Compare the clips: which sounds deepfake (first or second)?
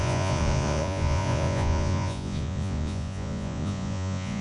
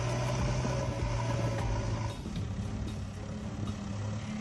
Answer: first